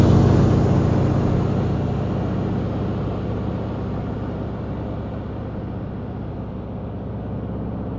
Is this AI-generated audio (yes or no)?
no